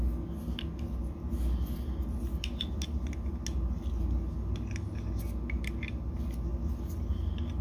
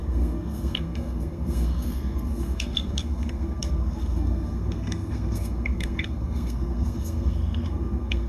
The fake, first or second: second